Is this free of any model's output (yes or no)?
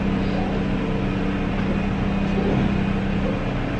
yes